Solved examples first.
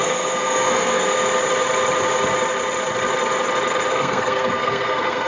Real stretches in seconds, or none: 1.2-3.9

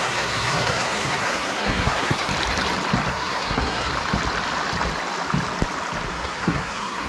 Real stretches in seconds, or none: 2.3-3.1; 3.9-6.1

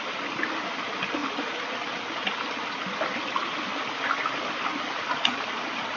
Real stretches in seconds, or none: 0.0-6.0